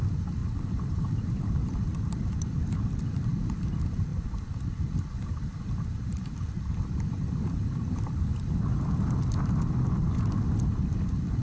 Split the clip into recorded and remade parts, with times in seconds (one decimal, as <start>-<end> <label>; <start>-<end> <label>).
0.0-0.4 remade; 0.4-1.4 recorded; 1.4-11.4 remade

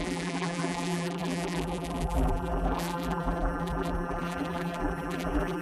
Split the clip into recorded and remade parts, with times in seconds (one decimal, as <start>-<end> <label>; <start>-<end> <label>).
0.0-5.6 remade

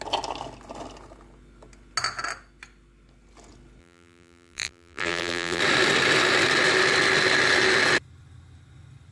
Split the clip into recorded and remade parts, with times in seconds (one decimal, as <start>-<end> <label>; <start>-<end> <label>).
0.0-3.8 recorded; 3.8-5.6 remade; 5.6-9.1 recorded